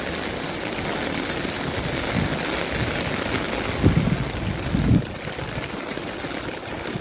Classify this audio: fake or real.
real